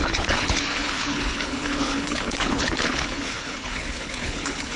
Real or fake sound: fake